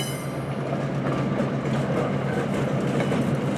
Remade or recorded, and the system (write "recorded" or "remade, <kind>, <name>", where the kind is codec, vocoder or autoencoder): recorded